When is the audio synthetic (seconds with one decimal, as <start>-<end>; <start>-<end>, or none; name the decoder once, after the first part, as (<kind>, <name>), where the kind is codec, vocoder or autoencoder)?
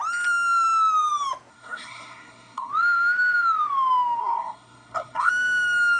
1.5-2.7 (codec, SNAC); 4.2-5.3